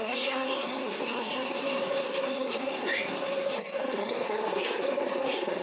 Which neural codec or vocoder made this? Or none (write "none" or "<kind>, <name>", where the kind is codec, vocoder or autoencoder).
codec, SNAC